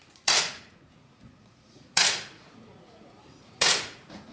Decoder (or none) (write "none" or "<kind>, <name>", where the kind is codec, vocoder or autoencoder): vocoder, Vocos